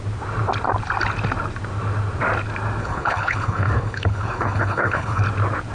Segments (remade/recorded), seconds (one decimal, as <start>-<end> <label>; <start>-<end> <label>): 0.0-2.8 recorded; 2.8-5.2 remade; 5.2-5.7 recorded